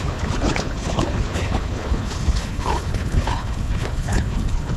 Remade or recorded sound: remade